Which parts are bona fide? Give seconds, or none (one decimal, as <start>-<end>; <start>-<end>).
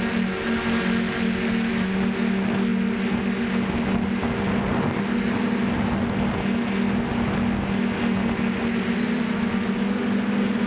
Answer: 0.0-10.7